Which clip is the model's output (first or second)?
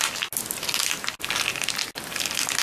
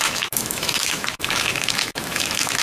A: second